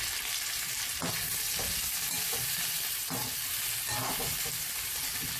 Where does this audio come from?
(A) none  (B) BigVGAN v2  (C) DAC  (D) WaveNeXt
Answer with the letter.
A